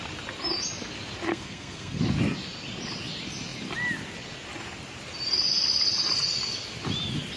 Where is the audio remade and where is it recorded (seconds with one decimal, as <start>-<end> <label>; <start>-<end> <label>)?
0.0-1.3 recorded; 1.3-2.0 remade; 2.0-7.4 recorded